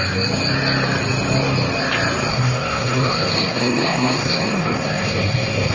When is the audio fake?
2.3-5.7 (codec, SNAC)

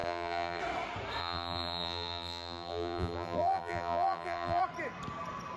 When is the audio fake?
0.0-0.6 (vocoder, BigVGAN v2); 1.2-4.6

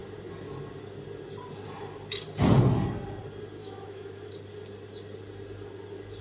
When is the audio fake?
3.6-4.3 (autoencoder, DAC-VAE)